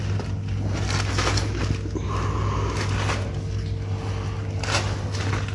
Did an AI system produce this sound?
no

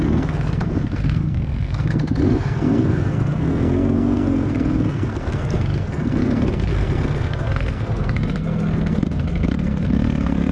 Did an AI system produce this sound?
yes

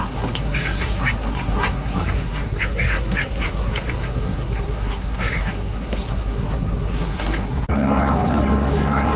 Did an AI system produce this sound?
yes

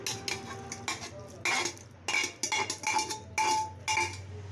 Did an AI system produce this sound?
no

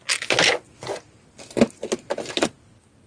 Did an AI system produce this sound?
no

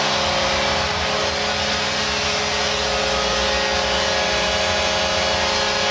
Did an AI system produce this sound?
no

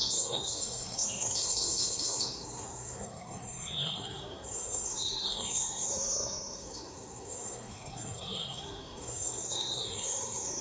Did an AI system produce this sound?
yes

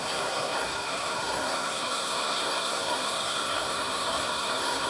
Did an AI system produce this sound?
yes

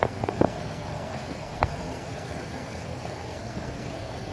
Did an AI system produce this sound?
yes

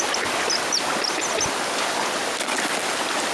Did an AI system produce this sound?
no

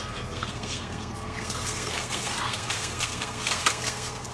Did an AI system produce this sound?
yes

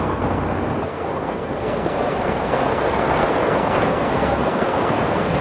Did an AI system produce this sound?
yes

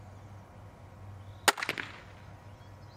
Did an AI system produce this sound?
no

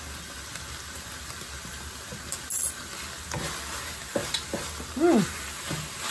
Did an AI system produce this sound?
no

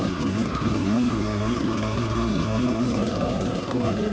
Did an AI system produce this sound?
yes